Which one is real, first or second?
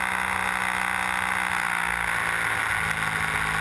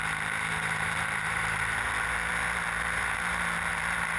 first